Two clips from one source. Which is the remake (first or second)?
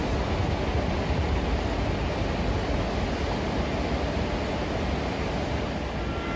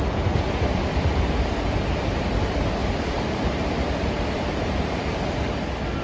second